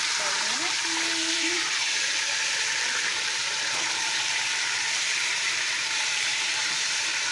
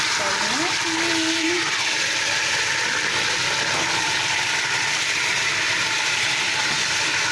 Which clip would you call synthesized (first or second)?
first